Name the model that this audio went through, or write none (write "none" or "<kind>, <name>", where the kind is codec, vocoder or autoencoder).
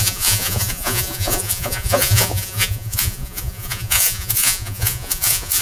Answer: vocoder, Vocos